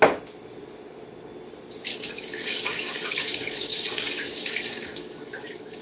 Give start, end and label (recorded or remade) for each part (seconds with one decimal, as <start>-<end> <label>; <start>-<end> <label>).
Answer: 0.0-1.9 recorded; 1.9-5.8 remade